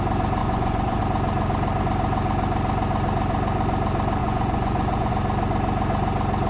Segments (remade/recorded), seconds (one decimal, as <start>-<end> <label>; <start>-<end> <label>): 0.0-0.4 recorded; 0.4-1.0 remade; 1.0-4.2 recorded; 4.2-5.1 remade; 5.1-6.5 recorded